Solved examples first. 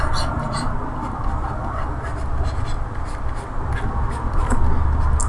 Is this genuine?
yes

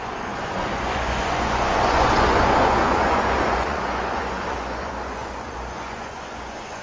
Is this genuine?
no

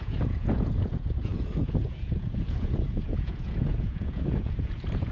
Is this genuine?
no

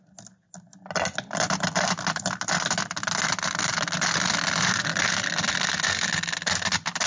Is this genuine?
yes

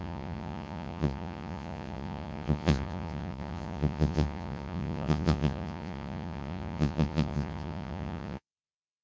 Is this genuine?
no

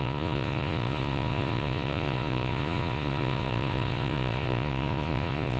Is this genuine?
no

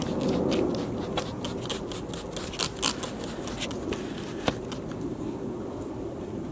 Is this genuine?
yes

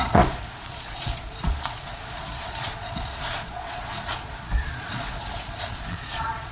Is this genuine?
no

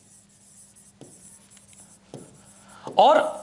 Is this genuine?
yes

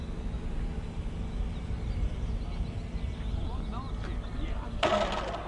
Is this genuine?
yes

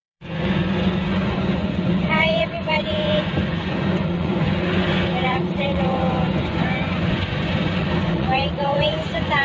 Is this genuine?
no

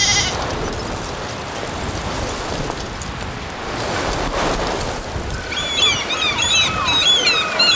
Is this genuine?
yes